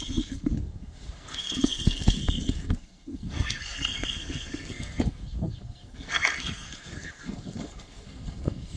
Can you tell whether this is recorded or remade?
remade